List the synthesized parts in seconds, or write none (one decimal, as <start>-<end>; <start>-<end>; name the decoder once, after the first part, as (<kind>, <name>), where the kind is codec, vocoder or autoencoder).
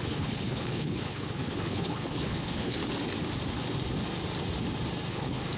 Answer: 0.0-2.8 (codec, HILCodec); 5.1-5.6